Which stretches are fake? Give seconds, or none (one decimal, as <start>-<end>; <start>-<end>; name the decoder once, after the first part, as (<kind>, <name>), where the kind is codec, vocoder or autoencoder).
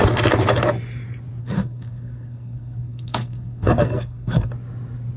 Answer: 1.4-4.5 (codec, SNAC)